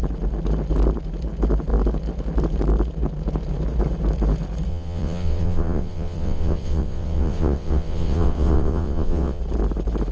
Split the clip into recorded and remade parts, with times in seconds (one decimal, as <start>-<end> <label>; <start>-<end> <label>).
0.0-4.7 recorded; 4.7-9.4 remade; 9.4-10.1 recorded